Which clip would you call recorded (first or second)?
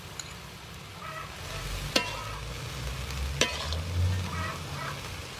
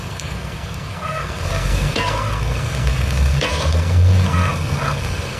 first